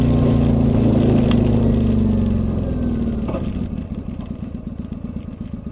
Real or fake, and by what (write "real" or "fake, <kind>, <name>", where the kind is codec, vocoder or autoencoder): real